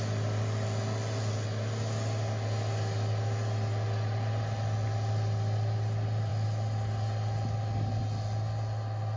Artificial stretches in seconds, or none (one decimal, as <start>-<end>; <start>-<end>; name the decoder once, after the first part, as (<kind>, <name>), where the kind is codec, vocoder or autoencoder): none